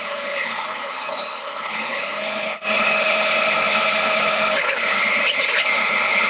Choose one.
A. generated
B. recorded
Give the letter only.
A